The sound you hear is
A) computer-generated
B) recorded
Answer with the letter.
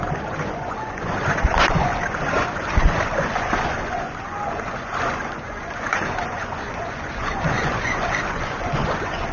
A